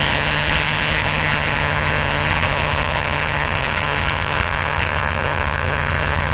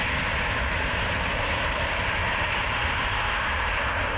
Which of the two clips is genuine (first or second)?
second